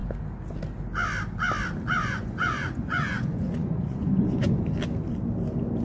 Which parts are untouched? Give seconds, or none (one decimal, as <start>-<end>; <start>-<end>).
0.0-2.0; 4.6-5.8